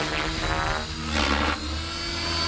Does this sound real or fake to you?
real